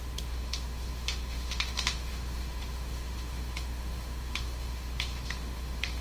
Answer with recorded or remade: remade